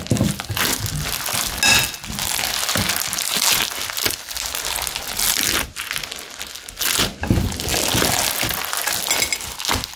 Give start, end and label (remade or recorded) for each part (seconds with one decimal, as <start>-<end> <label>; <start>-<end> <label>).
0.0-10.0 recorded